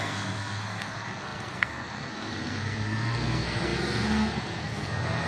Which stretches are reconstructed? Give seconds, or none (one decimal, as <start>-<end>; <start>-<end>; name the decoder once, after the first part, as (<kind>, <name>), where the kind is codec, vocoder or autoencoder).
0.0-5.3 (codec, SNAC)